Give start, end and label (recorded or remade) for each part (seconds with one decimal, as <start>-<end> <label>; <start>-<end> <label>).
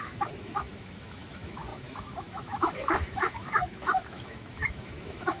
0.0-5.4 remade